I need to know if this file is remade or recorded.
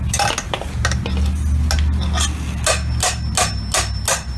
recorded